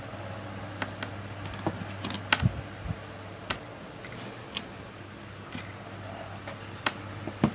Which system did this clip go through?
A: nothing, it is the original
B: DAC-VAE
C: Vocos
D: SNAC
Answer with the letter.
A